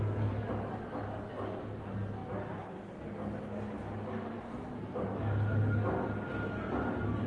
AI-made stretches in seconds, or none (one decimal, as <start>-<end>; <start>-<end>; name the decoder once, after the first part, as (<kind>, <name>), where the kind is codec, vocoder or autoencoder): none